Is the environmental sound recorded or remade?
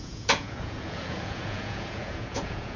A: remade